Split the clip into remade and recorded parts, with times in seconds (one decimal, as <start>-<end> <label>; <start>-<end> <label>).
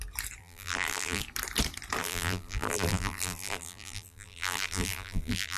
0.0-0.4 recorded; 0.4-1.2 remade; 1.2-2.0 recorded; 2.0-5.6 remade